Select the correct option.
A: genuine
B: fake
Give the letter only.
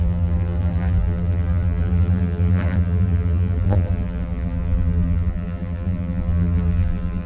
B